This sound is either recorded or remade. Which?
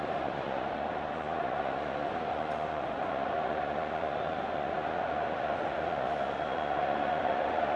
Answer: remade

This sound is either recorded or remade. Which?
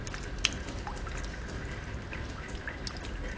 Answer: recorded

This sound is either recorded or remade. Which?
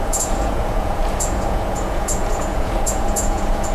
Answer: remade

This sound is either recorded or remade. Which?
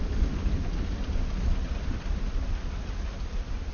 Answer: recorded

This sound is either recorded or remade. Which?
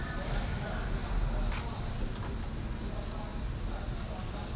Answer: recorded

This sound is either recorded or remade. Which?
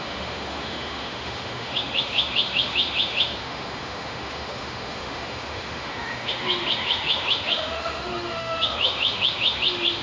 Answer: remade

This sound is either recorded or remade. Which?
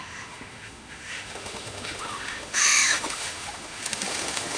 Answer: remade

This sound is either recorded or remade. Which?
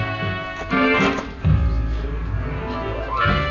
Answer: recorded